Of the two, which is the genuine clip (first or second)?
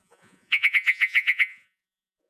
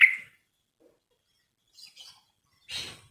second